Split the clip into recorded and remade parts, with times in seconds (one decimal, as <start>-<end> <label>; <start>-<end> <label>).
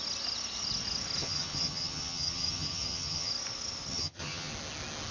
0.0-1.2 recorded; 1.2-3.3 remade; 3.3-3.9 recorded; 3.9-4.5 remade; 4.5-5.1 recorded